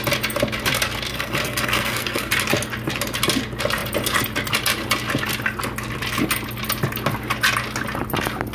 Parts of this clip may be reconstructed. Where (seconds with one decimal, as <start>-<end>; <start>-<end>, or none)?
1.1-2.3